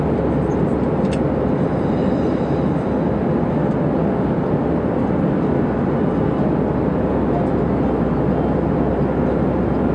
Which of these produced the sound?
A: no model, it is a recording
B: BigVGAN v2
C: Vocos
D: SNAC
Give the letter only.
A